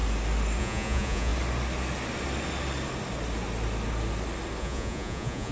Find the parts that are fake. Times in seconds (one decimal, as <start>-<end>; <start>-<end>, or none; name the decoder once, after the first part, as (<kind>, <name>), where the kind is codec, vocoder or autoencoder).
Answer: 0.6-1.3 (vocoder, Vocos); 4.6-5.5